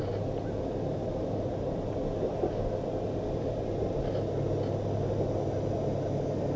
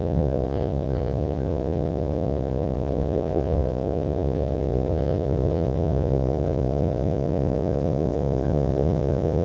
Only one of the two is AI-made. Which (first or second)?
second